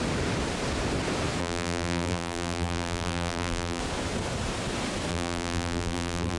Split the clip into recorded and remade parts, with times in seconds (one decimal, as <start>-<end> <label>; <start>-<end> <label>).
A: 0.0-1.4 recorded; 1.4-3.8 remade; 3.8-5.1 recorded; 5.1-6.4 remade